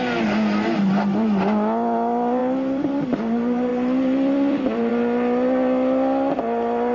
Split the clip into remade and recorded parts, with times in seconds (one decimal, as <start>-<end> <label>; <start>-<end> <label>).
0.0-2.4 recorded; 2.4-3.2 remade; 3.2-3.7 recorded; 3.7-4.9 remade; 4.9-6.9 recorded